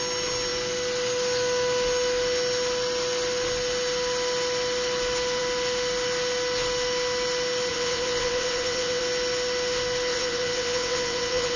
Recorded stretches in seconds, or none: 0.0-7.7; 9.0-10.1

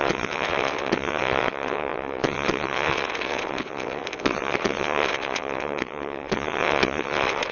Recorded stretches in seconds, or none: none

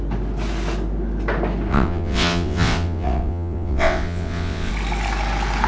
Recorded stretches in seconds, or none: 0.0-1.7; 4.7-5.7

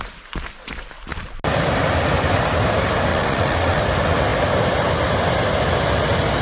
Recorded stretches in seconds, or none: 0.0-3.1; 3.8-6.4